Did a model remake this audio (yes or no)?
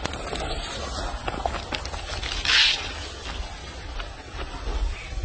no